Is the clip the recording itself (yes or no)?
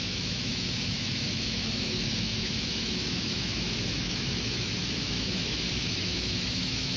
no